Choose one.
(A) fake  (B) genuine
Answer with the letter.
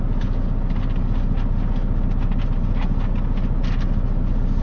B